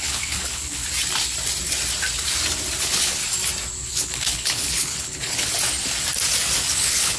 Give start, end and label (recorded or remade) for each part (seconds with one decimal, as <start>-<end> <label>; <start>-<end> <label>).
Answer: 0.0-0.8 remade; 0.8-2.8 recorded; 2.8-3.2 remade; 3.2-3.9 recorded; 3.9-5.5 remade; 5.5-6.7 recorded; 6.7-7.2 remade